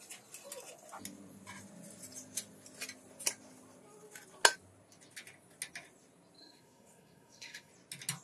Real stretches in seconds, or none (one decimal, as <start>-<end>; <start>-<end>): 0.0-6.4; 7.7-8.2